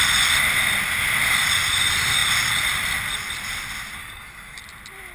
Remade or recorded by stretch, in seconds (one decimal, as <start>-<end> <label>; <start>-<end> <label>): 0.0-4.0 recorded; 4.0-4.6 remade; 4.6-5.1 recorded